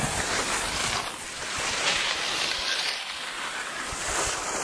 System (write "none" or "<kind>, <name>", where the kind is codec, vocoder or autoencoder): none